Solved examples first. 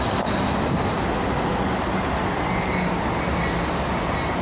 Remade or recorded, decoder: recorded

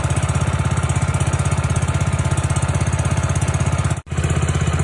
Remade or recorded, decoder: recorded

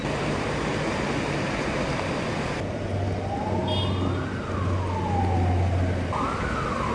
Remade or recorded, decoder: recorded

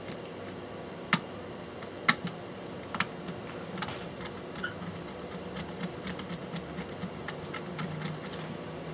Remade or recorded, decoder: recorded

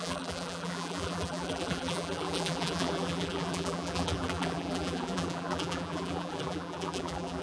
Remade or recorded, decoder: remade, vocoder, BigVGAN v2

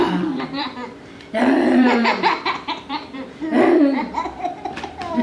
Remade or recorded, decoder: remade, vocoder, BigVGAN v2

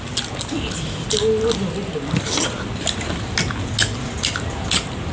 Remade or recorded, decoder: recorded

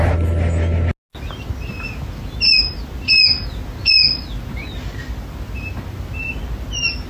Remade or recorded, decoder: recorded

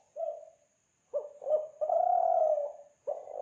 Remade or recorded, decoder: recorded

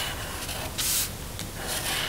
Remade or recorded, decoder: recorded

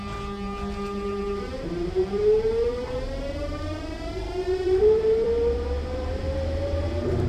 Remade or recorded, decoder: remade, vocoder, BigVGAN v2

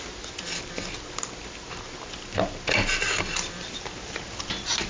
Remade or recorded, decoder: recorded